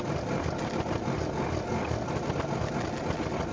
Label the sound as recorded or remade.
recorded